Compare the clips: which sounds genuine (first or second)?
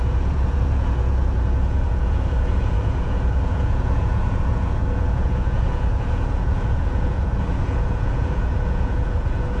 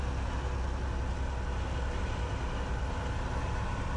second